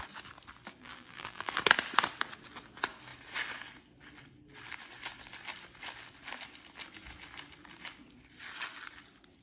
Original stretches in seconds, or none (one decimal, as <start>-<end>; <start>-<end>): 0.0-0.8; 1.5-9.4

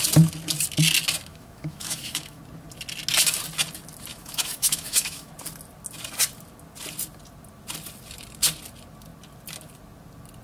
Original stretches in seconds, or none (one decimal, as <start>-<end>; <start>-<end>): 0.0-1.3; 2.4-4.1; 5.3-10.4

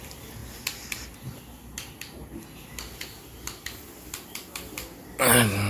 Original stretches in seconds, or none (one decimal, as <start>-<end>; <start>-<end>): 0.0-5.7